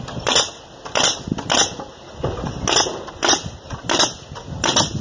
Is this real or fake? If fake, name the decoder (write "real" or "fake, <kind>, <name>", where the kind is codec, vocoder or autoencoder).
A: real